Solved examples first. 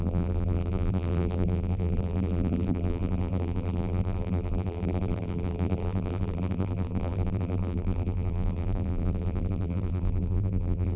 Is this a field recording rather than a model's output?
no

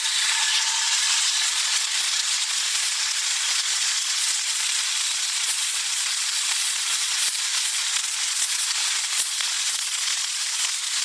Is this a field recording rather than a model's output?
no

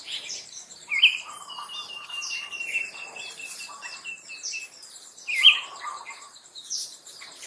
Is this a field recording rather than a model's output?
no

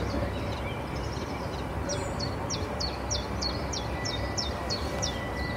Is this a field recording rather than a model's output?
yes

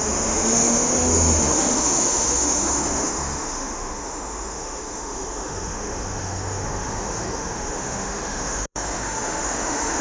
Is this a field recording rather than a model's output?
no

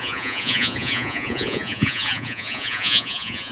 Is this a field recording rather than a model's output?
no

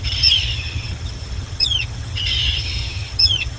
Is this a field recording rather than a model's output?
no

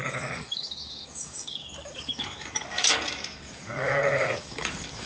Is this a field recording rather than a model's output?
no